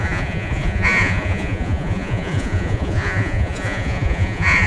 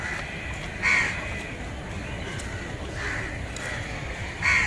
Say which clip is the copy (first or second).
first